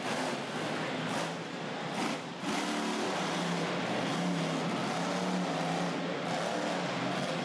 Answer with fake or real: real